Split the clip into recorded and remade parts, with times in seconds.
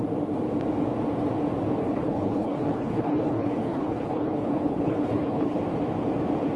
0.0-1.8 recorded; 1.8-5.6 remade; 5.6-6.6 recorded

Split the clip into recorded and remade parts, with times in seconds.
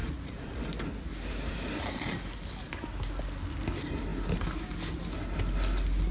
0.0-0.6 remade; 0.6-6.1 recorded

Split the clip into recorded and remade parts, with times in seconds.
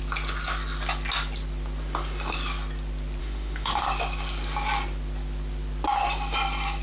0.0-3.2 recorded; 3.2-3.8 remade; 3.8-6.8 recorded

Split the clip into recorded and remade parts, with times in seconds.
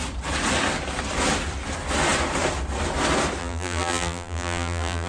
0.0-3.4 recorded; 3.4-5.1 remade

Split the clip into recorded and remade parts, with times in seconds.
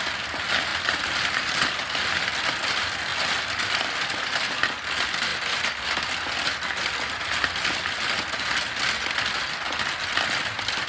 0.0-0.7 recorded; 0.7-1.7 remade; 1.7-10.9 recorded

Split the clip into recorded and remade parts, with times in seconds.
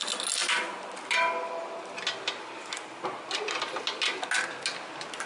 0.0-5.3 recorded